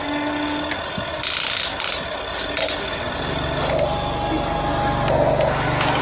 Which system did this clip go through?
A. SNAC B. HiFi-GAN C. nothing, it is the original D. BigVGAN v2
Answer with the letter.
C